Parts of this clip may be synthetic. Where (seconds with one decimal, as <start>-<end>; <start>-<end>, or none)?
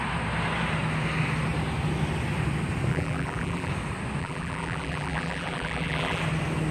2.9-3.7; 4.2-6.2